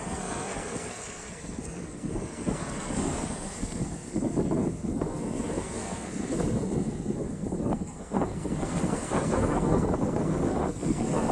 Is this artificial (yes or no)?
yes